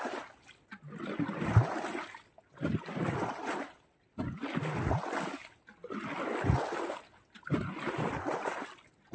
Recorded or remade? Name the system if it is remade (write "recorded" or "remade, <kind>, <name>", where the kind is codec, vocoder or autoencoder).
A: recorded